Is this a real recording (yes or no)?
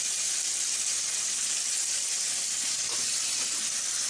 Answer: yes